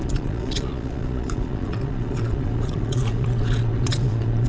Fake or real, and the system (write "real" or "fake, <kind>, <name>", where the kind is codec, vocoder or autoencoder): fake, vocoder, Vocos